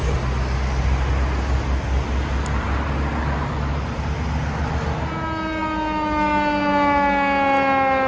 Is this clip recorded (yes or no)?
yes